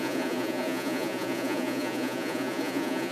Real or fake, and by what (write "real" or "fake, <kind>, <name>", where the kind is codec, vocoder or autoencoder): fake, vocoder, Vocos